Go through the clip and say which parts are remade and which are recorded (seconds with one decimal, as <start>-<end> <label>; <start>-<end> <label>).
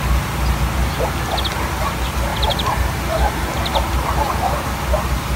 0.0-2.3 recorded; 2.3-3.9 remade; 3.9-5.4 recorded